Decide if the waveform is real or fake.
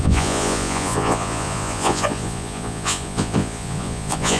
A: fake